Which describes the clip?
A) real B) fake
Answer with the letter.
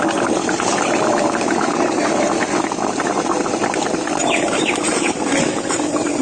A